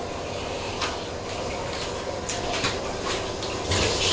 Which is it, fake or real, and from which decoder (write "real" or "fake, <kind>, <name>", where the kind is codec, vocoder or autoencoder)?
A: real